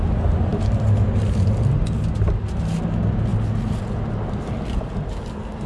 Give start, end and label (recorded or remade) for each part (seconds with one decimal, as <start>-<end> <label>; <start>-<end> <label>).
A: 0.0-5.7 recorded